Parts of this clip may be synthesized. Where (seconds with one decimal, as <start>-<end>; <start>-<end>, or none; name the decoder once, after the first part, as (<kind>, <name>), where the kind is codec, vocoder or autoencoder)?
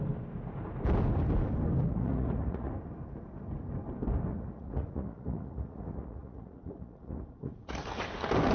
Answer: 1.8-2.7 (vocoder, Vocos); 4.3-8.0